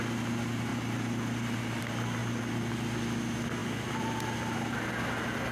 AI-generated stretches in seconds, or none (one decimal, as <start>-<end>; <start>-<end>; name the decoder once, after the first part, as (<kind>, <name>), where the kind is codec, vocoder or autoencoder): 0.7-1.8 (vocoder, BigVGAN v2); 2.2-2.7